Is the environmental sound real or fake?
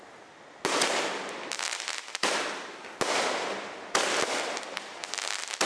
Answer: real